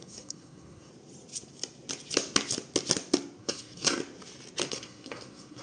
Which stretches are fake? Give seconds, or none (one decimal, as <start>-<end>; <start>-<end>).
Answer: 0.0-0.9; 3.4-4.0; 4.7-5.6

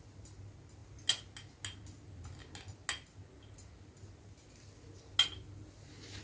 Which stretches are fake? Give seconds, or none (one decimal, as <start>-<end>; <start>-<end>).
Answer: none

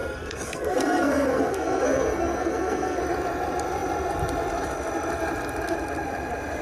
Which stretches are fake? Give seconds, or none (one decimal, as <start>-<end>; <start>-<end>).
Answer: 0.0-3.0